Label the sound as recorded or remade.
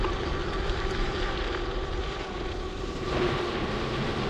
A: remade